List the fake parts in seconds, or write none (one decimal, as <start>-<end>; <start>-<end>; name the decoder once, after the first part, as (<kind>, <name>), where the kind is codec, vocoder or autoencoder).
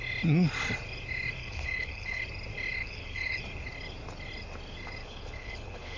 1.4-2.2 (codec, HILCodec); 2.8-3.4; 5.0-6.0